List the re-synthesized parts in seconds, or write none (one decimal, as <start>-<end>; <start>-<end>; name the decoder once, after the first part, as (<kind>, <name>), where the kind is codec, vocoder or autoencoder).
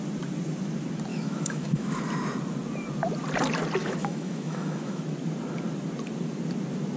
1.1-2.0 (autoencoder, DAC-VAE); 3.8-5.0